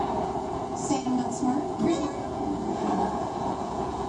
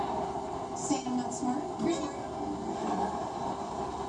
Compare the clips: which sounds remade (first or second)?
first